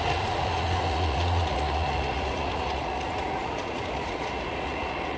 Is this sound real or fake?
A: fake